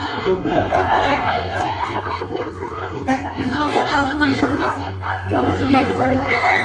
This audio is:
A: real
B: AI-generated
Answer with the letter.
B